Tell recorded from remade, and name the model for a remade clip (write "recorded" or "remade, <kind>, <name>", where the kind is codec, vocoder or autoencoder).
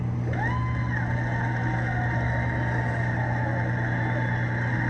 recorded